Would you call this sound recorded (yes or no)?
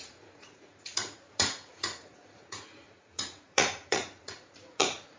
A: no